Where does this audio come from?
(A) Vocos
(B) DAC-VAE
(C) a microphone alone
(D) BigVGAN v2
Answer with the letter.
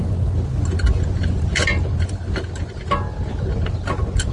C